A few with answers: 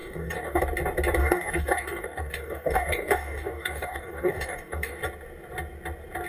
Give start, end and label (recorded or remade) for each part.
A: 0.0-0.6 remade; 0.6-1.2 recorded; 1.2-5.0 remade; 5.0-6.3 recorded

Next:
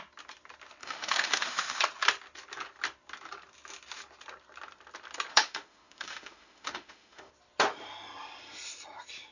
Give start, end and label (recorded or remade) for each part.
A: 0.0-0.8 recorded; 0.8-1.8 remade; 1.8-5.3 recorded; 5.3-7.3 remade; 7.3-9.3 recorded

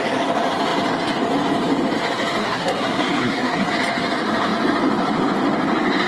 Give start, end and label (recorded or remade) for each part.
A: 0.0-2.4 recorded; 2.4-3.7 remade; 3.7-6.1 recorded

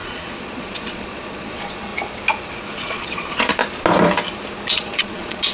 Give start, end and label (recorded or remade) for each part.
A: 0.0-1.9 remade; 1.9-2.6 recorded; 2.6-3.6 remade; 3.6-4.7 recorded; 4.7-5.5 remade